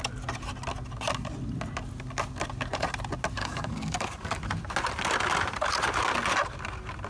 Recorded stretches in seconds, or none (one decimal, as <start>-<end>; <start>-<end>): 0.0-3.4; 4.4-7.1

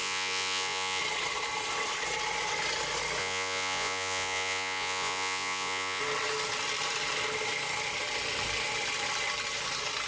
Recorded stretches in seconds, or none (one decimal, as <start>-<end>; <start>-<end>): 1.0-3.2; 6.0-10.1

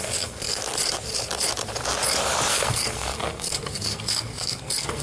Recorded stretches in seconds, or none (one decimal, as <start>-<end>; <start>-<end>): 0.6-2.5

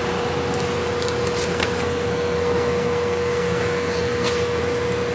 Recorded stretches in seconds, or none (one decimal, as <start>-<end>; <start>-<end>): 0.0-1.5; 4.6-5.1

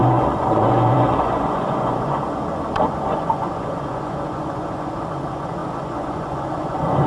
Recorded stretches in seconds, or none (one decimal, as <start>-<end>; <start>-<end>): none

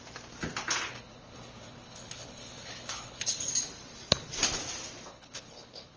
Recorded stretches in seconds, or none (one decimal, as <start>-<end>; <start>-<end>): 0.0-0.9; 3.5-5.1